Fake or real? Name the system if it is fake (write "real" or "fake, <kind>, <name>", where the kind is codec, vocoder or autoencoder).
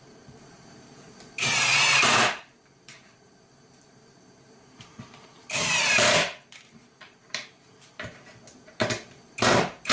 fake, vocoder, BigVGAN v2